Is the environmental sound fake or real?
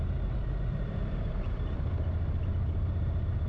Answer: real